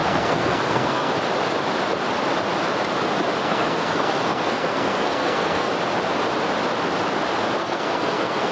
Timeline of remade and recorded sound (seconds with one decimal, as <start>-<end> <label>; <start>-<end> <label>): 0.0-1.1 remade; 1.1-3.4 recorded; 3.4-5.7 remade; 5.7-7.6 recorded; 7.6-8.5 remade